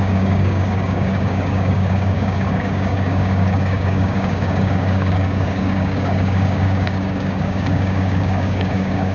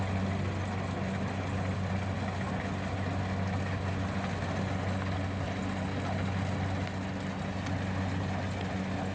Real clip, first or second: second